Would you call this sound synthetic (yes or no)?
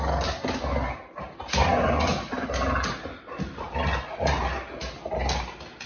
no